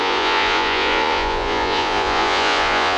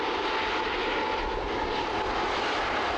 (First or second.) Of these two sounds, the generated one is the first